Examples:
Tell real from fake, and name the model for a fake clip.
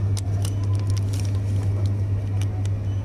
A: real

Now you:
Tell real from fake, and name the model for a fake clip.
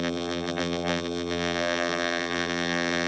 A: fake, vocoder, BigVGAN v2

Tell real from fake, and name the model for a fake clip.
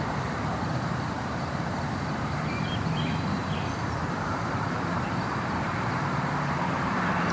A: fake, vocoder, BigVGAN v2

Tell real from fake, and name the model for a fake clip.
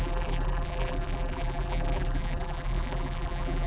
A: fake, vocoder, BigVGAN v2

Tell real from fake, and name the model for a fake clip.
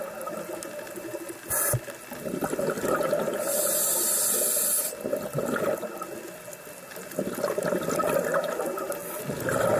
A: real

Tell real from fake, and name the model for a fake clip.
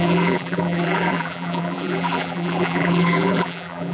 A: fake, vocoder, BigVGAN v2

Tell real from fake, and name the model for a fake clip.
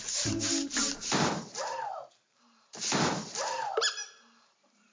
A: fake, vocoder, BigVGAN v2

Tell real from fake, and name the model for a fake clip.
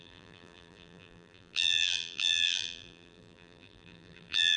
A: fake, vocoder, BigVGAN v2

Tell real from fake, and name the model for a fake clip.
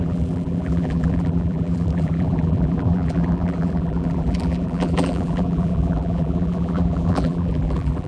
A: fake, vocoder, BigVGAN v2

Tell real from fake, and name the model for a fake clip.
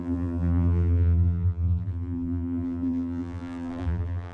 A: fake, vocoder, BigVGAN v2